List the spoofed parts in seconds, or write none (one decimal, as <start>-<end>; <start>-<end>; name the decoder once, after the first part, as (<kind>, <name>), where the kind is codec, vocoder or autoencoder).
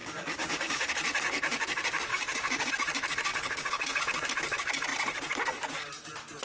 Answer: 0.0-0.9 (codec, DAC); 2.1-2.7; 3.3-4.0